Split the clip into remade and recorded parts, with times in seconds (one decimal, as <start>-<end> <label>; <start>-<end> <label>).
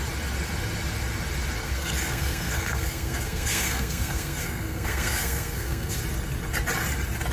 0.0-1.6 recorded; 1.6-6.0 remade; 6.0-7.3 recorded